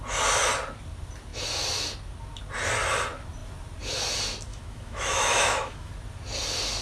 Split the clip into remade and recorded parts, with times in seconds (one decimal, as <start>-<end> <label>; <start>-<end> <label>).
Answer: 0.0-4.5 recorded; 4.5-5.9 remade; 5.9-6.8 recorded